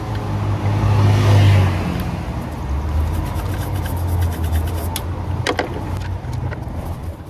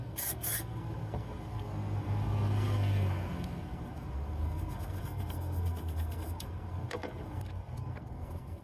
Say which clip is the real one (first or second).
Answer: first